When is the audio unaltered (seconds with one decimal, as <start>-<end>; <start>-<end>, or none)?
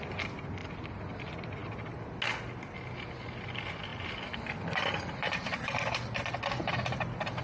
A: 0.0-0.6; 1.2-1.6; 2.2-3.9; 6.2-7.4